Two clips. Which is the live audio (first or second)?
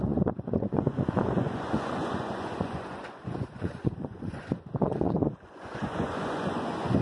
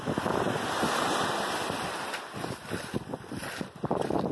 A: second